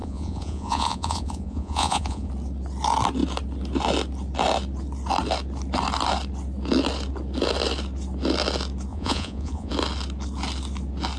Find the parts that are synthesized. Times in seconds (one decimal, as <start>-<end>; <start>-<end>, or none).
0.0-2.3; 8.9-9.7